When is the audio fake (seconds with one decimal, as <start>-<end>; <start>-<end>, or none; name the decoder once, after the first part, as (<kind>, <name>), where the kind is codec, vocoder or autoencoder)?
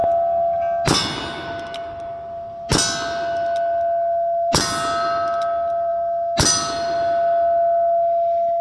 none